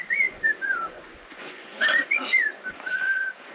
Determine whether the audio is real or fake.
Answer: fake